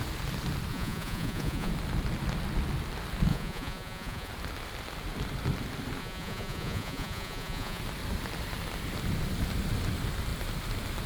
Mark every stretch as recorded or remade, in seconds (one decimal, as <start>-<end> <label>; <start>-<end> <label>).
0.0-0.7 recorded; 0.7-1.7 remade; 1.7-3.3 recorded; 3.3-4.3 remade; 4.3-6.0 recorded; 6.0-7.8 remade; 7.8-11.1 recorded